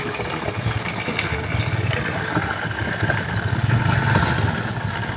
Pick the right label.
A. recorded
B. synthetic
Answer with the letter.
A